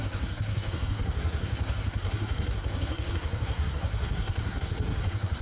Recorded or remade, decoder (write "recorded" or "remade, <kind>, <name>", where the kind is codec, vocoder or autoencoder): remade, codec, SNAC